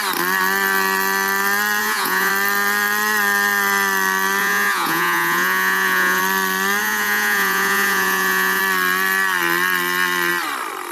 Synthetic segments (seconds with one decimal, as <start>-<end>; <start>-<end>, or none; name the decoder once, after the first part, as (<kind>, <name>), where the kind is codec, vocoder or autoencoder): 1.8-2.3 (vocoder, Vocos); 4.4-6.2; 6.8-8.6